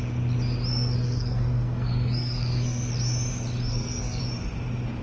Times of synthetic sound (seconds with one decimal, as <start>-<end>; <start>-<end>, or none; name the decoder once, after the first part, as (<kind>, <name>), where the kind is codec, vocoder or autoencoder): 0.7-2.9 (codec, SNAC); 3.7-4.2